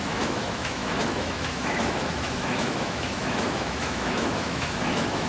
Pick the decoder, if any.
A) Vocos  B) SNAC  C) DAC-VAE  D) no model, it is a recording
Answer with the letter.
C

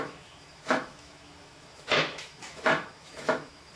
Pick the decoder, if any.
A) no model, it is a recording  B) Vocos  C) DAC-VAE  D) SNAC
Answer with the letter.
C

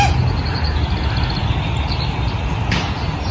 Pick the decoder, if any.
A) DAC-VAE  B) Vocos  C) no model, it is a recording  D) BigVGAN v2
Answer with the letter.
C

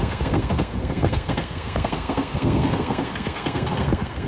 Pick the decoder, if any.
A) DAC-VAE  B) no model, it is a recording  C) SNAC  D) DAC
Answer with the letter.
C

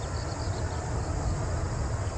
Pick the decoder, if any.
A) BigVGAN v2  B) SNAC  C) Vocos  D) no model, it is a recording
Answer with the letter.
D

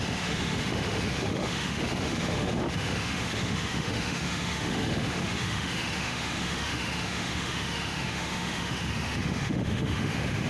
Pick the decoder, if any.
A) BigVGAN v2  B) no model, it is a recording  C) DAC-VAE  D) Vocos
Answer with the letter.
C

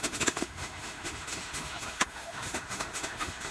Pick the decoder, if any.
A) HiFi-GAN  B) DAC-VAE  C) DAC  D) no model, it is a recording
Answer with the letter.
B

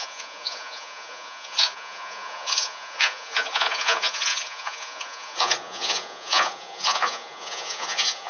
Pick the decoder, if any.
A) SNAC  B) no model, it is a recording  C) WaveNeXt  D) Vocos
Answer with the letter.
D